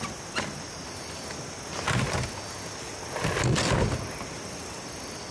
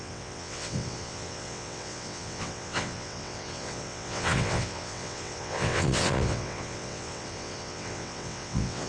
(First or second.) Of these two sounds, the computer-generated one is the second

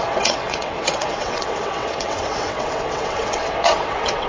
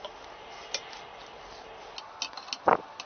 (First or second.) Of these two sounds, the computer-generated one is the first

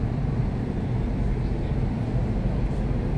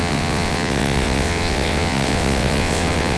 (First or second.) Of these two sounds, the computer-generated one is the second